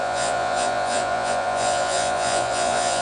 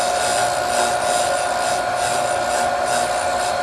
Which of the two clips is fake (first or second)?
first